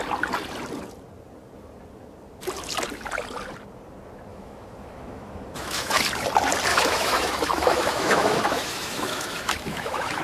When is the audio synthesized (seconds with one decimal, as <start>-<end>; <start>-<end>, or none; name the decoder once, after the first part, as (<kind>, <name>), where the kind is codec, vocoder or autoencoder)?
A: 4.3-6.0 (autoencoder, DAC-VAE); 6.7-10.2